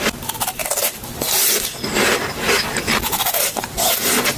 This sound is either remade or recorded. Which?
recorded